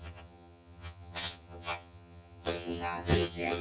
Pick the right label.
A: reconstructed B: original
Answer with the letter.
A